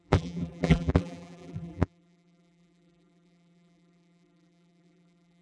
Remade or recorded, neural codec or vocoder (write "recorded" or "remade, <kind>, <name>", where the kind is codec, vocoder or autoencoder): remade, vocoder, BigVGAN v2